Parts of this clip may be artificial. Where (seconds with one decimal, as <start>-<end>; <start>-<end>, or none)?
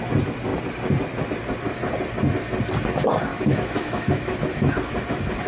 3.3-4.7